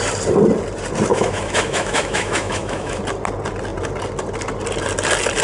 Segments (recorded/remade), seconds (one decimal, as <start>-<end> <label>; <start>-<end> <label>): 0.0-1.1 recorded; 1.1-3.0 remade; 3.0-5.4 recorded